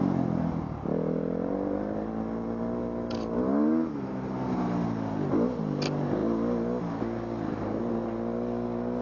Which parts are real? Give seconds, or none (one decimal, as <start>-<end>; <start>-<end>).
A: 0.0-9.0